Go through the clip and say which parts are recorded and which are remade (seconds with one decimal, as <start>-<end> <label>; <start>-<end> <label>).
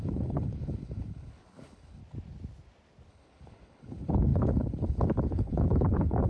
0.0-2.0 remade; 2.0-3.1 recorded; 3.1-6.3 remade